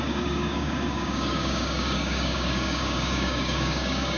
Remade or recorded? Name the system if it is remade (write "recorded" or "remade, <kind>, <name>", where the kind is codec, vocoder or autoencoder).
remade, codec, DAC